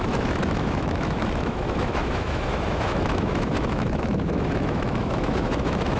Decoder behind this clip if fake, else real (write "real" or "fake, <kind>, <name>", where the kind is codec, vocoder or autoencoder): fake, autoencoder, DAC-VAE